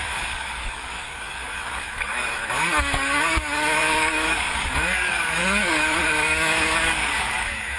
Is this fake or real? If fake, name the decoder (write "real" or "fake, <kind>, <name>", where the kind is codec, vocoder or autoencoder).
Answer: fake, codec, DAC